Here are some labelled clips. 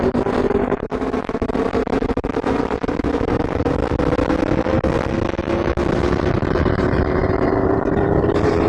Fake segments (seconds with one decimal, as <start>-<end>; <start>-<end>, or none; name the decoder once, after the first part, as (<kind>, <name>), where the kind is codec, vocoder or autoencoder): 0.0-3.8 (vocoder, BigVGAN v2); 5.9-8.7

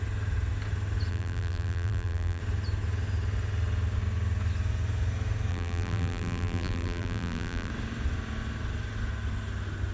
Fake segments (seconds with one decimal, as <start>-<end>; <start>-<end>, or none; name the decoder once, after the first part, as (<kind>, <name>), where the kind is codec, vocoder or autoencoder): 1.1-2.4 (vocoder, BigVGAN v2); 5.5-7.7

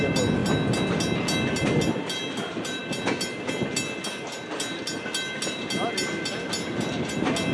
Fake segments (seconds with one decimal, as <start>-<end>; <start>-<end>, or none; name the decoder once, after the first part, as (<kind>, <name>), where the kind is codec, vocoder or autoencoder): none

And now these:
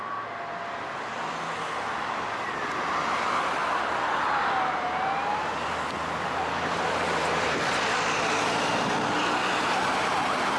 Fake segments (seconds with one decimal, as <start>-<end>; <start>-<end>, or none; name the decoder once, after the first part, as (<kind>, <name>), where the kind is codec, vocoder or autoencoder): 3.6-8.4 (vocoder, BigVGAN v2)

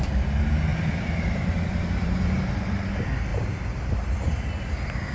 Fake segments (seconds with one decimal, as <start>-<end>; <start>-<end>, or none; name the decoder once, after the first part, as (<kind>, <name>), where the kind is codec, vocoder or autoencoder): 0.7-2.4 (vocoder, BigVGAN v2); 3.3-3.9

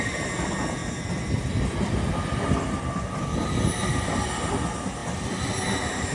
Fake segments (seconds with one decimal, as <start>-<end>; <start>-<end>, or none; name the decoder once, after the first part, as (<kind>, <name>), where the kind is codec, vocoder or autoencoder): 5.0-5.5 (vocoder, BigVGAN v2)

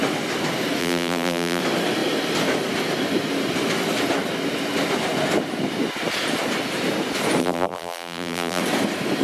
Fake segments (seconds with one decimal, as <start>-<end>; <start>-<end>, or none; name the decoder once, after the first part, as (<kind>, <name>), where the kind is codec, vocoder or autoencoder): 0.8-1.6 (vocoder, BigVGAN v2); 7.4-8.6